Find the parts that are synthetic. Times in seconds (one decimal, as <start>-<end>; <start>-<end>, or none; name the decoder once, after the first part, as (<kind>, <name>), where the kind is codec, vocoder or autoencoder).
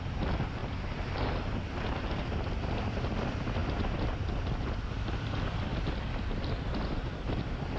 0.0-0.6 (vocoder, BigVGAN v2); 2.8-7.8